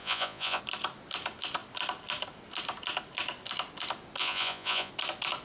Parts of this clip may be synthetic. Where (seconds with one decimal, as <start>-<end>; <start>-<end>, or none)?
0.0-0.6; 4.2-4.9